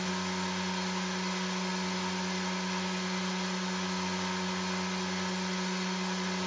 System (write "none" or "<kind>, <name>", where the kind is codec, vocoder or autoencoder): none